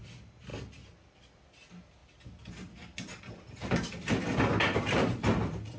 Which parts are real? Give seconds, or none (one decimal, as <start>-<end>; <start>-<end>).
0.0-5.8